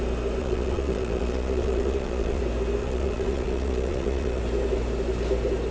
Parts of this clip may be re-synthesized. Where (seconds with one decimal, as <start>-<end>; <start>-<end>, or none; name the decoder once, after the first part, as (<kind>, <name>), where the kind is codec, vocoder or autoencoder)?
0.4-2.4 (vocoder, Vocos); 2.8-4.4